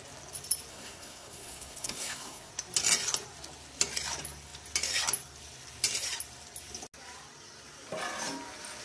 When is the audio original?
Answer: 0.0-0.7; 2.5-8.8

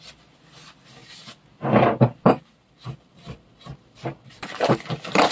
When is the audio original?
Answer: 0.0-5.3

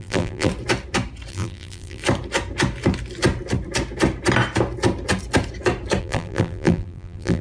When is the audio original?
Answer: 0.5-1.3; 2.0-6.0

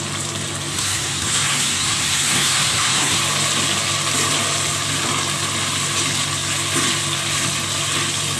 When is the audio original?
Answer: 0.0-0.7; 3.2-8.4

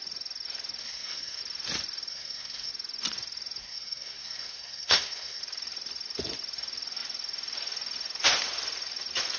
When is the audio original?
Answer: 0.0-0.8; 1.4-2.1; 2.7-3.6; 5.4-9.4